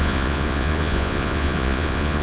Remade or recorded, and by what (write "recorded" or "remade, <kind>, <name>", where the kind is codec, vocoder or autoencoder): remade, vocoder, Vocos